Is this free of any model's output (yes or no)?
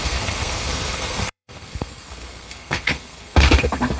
no